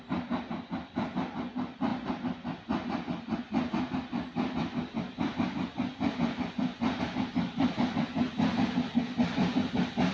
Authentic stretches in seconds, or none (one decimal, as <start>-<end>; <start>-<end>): 0.0-10.1